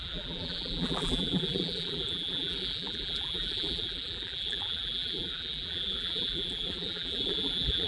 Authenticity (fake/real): fake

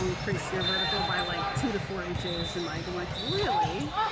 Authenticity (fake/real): real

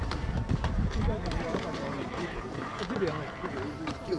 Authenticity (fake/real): fake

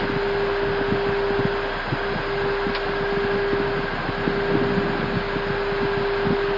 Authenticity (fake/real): real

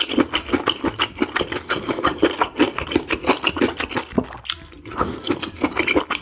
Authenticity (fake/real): real